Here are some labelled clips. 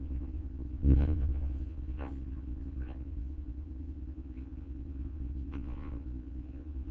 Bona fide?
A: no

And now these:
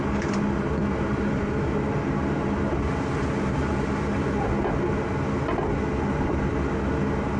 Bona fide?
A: yes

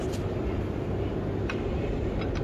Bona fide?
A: yes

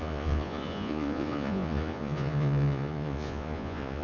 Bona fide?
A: no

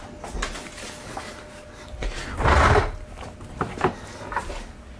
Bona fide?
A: yes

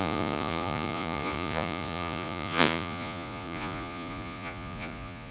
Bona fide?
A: no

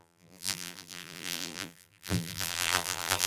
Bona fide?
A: no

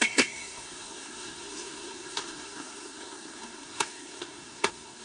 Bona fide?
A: no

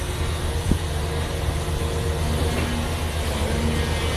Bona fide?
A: yes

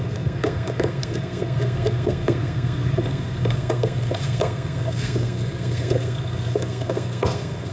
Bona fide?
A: no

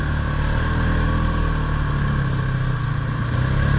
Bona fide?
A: yes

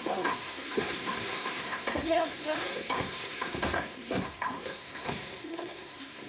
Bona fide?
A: no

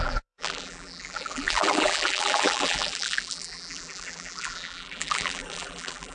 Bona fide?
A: no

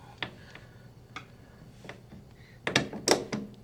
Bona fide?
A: yes